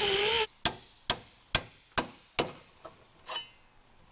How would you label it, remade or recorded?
recorded